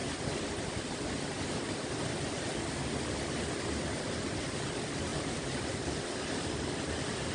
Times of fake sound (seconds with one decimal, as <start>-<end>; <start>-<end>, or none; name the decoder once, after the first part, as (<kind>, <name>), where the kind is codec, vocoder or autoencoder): 5.1-5.9 (vocoder, BigVGAN v2)